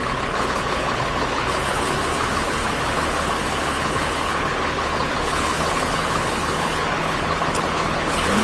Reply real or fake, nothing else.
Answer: fake